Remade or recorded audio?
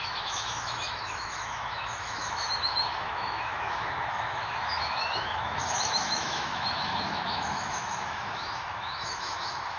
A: remade